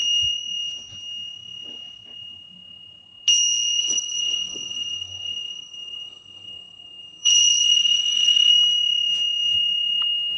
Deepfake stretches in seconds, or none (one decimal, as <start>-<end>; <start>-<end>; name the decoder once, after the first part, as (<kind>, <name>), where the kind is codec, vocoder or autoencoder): 3.8-8.5 (codec, SNAC)